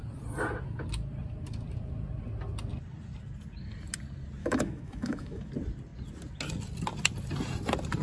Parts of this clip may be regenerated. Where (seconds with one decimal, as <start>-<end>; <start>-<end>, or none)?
4.4-5.5